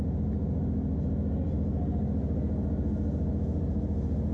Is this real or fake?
real